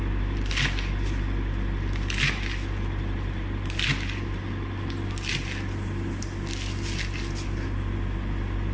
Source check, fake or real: real